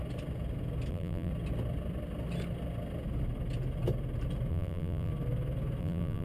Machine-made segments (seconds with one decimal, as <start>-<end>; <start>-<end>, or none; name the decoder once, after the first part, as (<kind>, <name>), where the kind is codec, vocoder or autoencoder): 0.9-1.3 (vocoder, BigVGAN v2); 4.5-5.1; 5.8-6.2